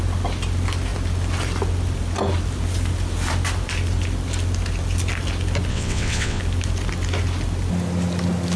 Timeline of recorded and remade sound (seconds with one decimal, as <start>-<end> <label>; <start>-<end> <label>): 0.0-5.7 recorded; 5.7-6.4 remade; 6.4-8.6 recorded